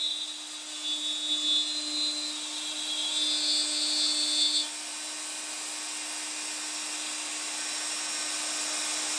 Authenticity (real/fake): real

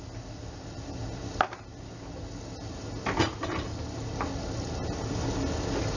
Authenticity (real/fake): real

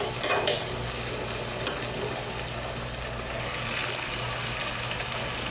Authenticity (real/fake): real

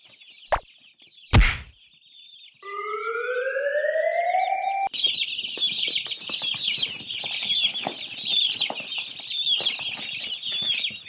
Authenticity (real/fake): real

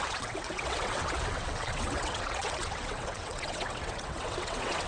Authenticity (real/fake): fake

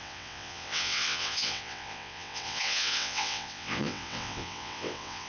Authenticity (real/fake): fake